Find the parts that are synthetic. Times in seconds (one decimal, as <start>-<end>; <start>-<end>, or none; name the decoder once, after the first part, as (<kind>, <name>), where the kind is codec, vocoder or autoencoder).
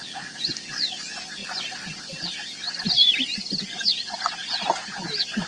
1.4-3.5 (vocoder, BigVGAN v2); 3.9-5.5